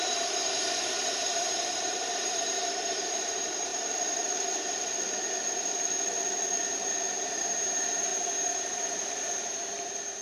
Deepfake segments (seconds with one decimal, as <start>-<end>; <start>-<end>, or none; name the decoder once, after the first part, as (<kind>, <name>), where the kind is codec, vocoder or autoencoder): 0.0-3.7 (vocoder, BigVGAN v2); 7.3-10.2